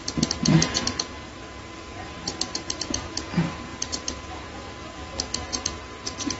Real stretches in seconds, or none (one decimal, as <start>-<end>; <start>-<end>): 0.0-2.5; 3.1-6.4